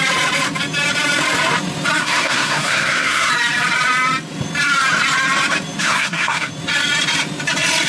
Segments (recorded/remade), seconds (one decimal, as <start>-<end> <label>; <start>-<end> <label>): 0.0-2.0 recorded; 2.0-3.3 remade; 3.3-5.8 recorded; 5.8-6.5 remade; 6.5-7.9 recorded